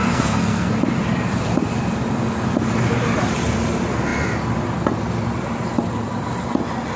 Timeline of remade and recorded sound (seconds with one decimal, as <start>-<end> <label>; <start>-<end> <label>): 0.0-0.7 remade; 0.7-7.0 recorded